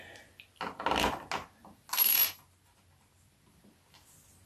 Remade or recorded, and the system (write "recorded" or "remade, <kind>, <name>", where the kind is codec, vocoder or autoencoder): recorded